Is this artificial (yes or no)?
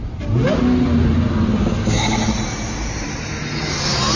no